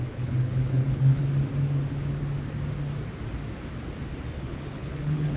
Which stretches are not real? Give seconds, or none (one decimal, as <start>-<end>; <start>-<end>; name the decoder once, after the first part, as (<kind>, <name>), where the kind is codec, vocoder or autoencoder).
0.0-1.2 (codec, HILCodec); 4.4-5.4